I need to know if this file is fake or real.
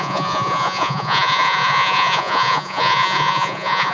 fake